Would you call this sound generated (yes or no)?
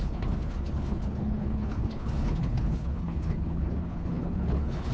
yes